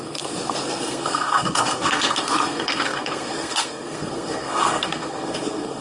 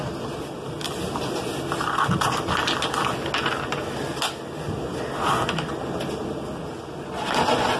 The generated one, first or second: first